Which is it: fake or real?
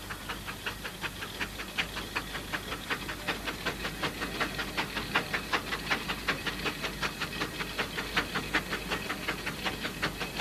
real